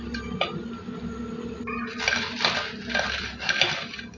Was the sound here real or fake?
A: real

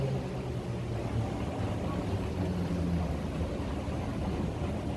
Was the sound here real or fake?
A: real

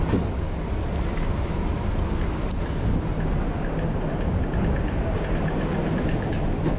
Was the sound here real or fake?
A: real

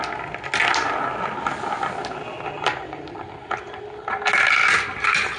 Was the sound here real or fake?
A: real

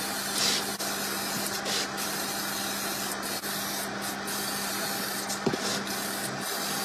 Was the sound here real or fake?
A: real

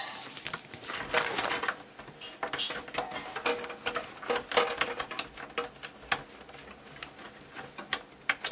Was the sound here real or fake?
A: real